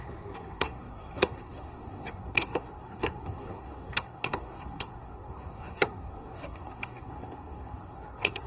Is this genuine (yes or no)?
no